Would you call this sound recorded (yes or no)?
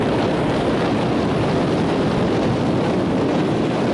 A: no